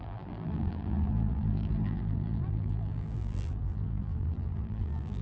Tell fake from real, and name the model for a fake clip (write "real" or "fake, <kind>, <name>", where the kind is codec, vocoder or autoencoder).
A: fake, vocoder, BigVGAN v2